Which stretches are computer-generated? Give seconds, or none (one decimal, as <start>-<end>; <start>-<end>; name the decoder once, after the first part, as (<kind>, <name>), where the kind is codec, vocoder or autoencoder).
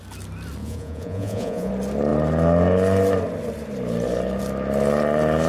0.6-1.7 (vocoder, Vocos)